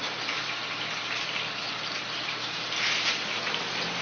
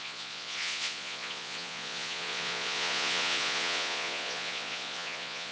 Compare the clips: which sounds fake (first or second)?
second